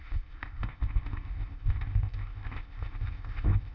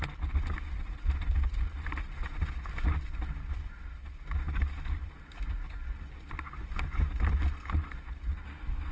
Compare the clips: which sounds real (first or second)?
second